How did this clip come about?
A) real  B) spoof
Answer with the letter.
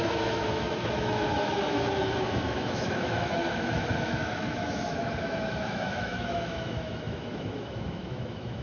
B